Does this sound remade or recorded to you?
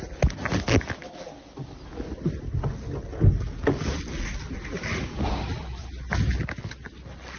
recorded